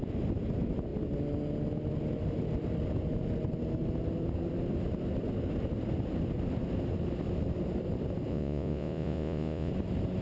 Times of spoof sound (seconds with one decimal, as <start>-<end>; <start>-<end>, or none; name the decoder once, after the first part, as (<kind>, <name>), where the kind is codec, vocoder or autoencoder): 8.3-9.7 (vocoder, Vocos)